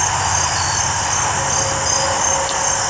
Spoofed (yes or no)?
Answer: no